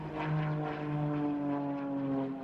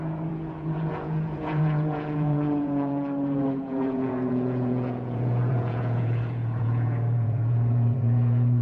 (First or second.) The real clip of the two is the first